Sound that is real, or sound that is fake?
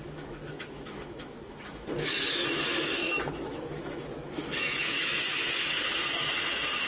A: fake